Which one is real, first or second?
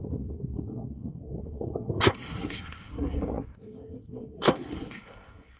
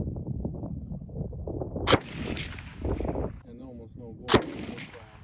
second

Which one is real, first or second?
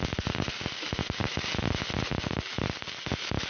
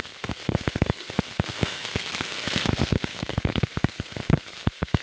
first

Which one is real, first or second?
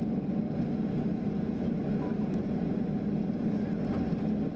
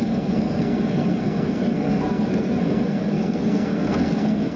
first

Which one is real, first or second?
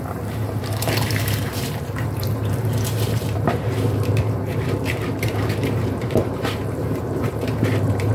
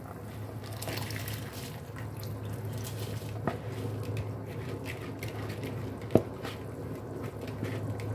second